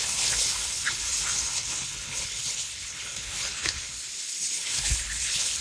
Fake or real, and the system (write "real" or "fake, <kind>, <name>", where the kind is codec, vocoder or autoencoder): fake, codec, HILCodec